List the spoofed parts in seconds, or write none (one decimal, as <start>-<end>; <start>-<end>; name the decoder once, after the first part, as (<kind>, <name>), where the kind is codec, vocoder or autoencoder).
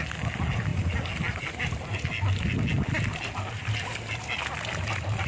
none